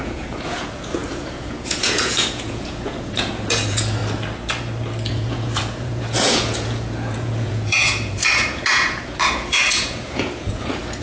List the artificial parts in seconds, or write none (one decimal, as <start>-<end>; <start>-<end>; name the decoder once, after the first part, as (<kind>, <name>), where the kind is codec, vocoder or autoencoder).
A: 0.0-4.0 (vocoder, Vocos); 5.1-11.0